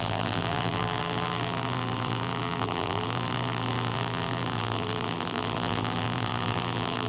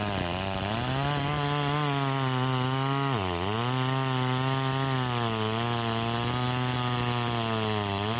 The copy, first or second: first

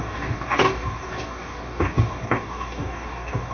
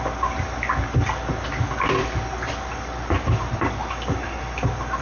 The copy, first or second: first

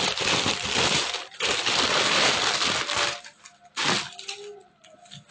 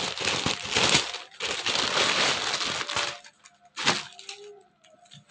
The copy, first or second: first